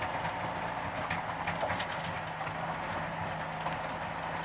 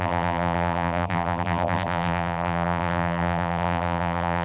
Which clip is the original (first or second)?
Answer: first